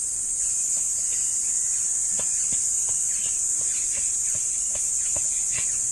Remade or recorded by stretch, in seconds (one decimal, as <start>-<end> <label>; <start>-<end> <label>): 0.0-5.9 recorded